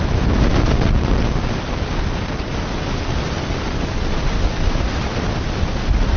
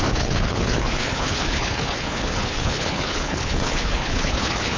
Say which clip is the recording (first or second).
first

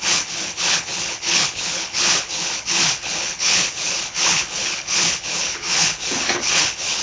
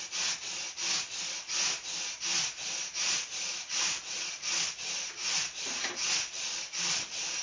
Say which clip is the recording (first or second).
second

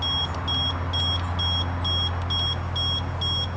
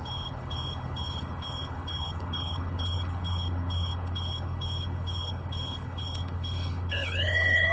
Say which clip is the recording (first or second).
first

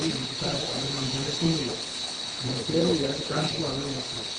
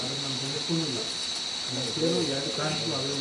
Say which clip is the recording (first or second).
second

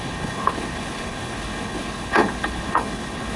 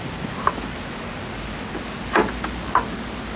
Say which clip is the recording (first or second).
second